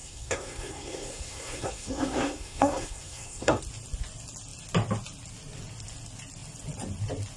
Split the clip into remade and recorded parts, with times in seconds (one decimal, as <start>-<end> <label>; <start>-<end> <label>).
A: 0.0-3.6 remade; 3.6-7.4 recorded

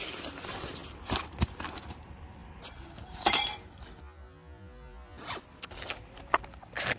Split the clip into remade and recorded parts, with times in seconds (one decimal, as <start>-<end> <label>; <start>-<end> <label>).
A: 0.0-7.0 recorded

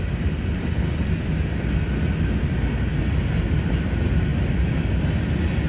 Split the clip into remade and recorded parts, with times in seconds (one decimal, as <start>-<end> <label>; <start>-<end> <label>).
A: 0.0-4.3 recorded; 4.3-4.9 remade; 4.9-5.7 recorded

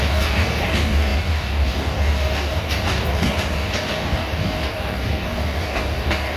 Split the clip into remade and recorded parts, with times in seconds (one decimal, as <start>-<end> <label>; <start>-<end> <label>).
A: 0.0-6.4 remade